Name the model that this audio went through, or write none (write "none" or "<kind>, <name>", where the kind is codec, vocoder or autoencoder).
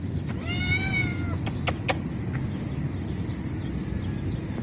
none